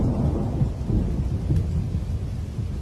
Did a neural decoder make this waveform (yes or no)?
no